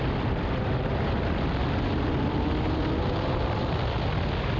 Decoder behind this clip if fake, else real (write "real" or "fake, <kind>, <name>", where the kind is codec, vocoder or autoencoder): real